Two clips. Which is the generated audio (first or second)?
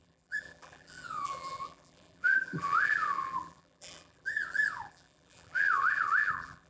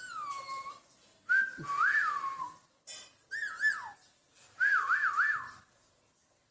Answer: first